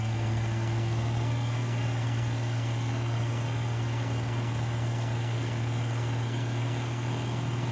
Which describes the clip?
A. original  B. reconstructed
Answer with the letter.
B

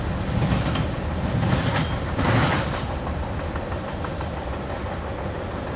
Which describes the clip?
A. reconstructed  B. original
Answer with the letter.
B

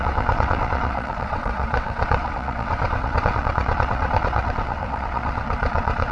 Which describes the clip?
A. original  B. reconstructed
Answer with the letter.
B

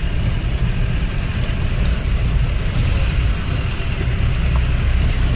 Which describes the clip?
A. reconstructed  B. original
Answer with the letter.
B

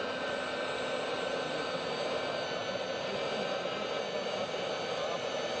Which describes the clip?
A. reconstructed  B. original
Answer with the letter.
B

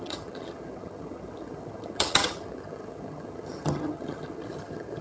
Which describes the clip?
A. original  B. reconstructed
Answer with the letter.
B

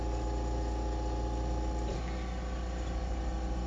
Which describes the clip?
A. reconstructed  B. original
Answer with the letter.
B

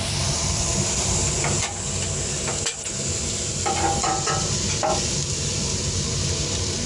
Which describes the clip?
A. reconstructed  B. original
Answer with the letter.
A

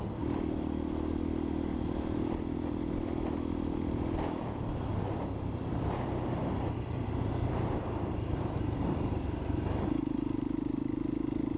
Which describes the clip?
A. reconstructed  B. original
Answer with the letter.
A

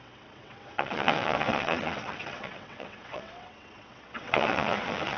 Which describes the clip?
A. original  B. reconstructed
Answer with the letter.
B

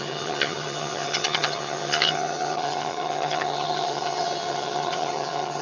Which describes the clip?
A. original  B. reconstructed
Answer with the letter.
B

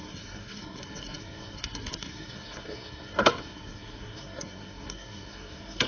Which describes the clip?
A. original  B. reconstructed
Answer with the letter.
B